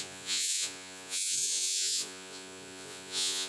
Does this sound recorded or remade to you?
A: remade